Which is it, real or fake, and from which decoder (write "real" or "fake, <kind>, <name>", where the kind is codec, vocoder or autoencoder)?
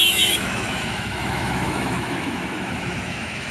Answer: fake, autoencoder, DAC-VAE